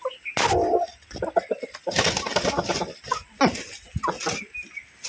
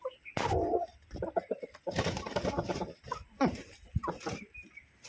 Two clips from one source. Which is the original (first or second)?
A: first